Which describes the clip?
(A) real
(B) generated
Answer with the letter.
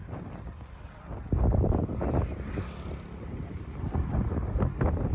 A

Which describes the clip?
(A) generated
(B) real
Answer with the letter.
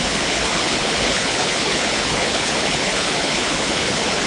A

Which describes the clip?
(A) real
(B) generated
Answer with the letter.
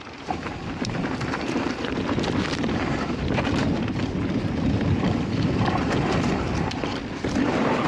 B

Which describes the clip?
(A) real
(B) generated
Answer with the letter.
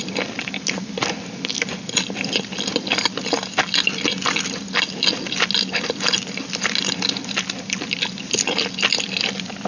A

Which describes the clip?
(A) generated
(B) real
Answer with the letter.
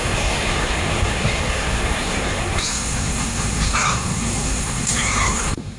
A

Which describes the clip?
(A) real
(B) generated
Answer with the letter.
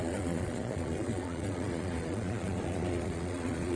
B